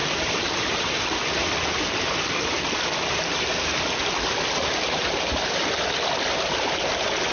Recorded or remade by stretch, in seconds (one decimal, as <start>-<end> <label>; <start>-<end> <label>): 0.0-4.1 remade; 4.1-7.3 recorded